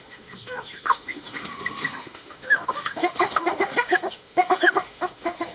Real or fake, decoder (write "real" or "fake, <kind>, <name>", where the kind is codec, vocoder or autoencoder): fake, autoencoder, DAC-VAE